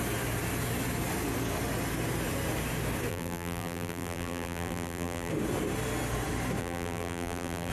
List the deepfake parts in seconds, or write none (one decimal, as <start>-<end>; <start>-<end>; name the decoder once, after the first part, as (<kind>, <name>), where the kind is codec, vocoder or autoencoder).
3.1-5.3 (vocoder, BigVGAN v2); 6.6-7.7